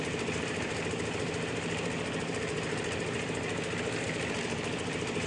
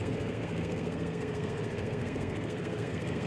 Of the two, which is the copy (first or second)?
second